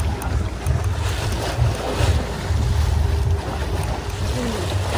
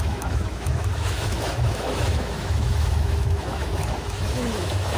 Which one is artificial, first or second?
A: second